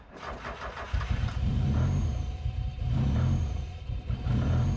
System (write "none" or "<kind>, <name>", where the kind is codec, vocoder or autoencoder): vocoder, BigVGAN v2